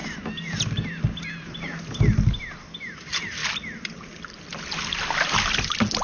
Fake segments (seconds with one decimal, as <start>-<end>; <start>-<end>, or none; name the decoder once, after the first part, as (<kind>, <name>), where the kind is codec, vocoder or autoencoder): none